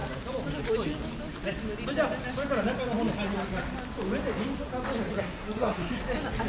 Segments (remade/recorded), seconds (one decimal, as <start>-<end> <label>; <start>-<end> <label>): 0.0-5.1 recorded; 5.1-6.0 remade; 6.0-6.5 recorded